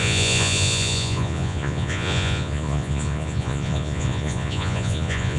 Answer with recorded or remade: remade